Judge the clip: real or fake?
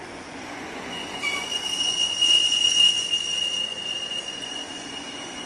fake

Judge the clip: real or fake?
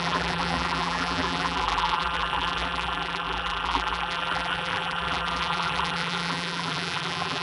fake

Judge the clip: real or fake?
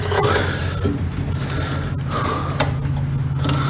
real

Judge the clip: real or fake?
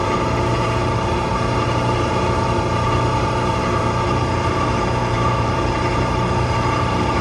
fake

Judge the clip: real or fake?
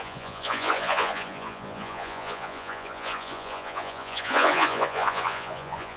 fake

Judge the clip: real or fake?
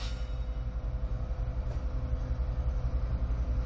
real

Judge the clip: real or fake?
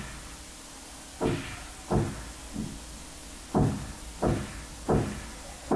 real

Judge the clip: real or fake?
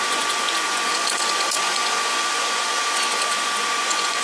fake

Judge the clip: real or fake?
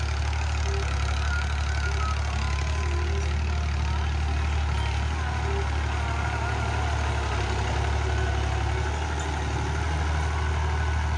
real